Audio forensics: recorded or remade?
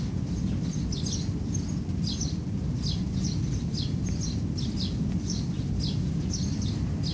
recorded